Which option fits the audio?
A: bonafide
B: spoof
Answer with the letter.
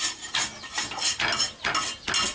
A